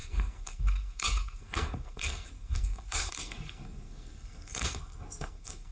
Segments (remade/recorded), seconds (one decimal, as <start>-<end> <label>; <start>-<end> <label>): 0.0-5.7 remade